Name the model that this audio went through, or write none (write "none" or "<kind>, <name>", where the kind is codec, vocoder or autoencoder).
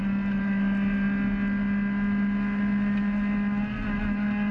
none